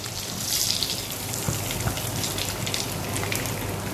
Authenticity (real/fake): real